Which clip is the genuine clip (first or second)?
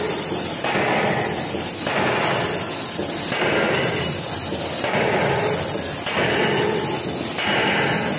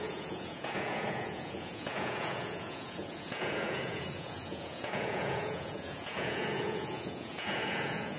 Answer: first